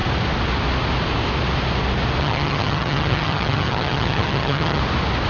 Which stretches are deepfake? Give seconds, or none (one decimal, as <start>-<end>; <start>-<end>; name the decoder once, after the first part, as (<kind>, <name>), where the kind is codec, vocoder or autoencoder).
2.2-4.8 (vocoder, HiFi-GAN)